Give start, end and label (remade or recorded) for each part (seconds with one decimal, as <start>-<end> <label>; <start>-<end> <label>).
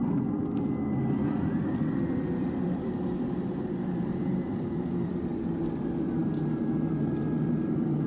0.0-6.2 remade; 6.2-6.9 recorded; 6.9-8.1 remade